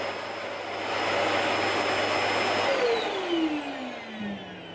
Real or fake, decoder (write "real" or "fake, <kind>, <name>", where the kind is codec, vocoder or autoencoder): real